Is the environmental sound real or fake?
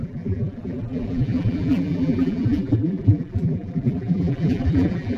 fake